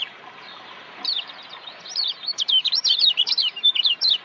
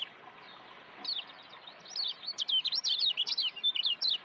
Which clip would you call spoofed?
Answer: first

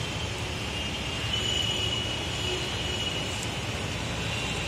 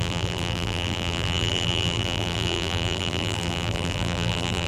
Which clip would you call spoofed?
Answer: second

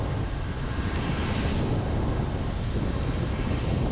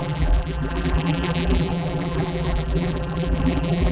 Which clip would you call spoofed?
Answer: second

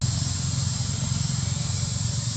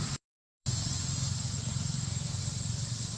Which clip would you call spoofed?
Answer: second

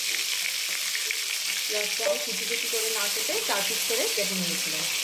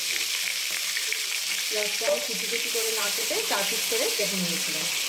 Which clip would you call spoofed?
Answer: second